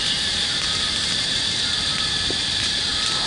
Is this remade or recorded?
recorded